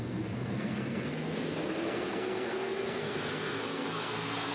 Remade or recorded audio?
remade